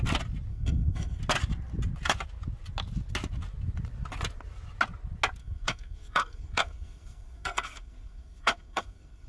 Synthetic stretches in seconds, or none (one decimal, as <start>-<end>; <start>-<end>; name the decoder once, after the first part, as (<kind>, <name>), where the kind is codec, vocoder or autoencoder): 0.5-1.2 (codec, SNAC); 5.4-9.3